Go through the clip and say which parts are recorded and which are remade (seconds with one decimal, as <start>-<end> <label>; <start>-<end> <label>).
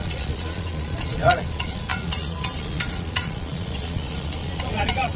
0.0-5.2 remade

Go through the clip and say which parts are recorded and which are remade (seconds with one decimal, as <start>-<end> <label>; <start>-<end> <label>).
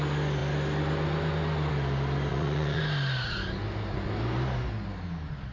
0.0-2.3 recorded; 2.3-2.8 remade; 2.8-5.5 recorded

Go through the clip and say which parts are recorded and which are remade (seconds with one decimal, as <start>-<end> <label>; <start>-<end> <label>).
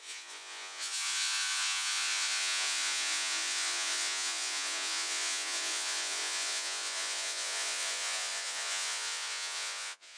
0.0-10.2 remade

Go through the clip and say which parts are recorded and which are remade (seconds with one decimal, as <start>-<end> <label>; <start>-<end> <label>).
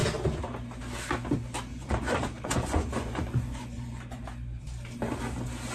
0.0-1.7 recorded; 1.7-4.2 remade; 4.2-5.7 recorded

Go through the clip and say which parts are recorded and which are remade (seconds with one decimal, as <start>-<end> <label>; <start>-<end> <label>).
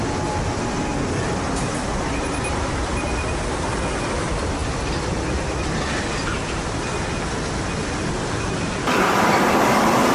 0.0-10.1 recorded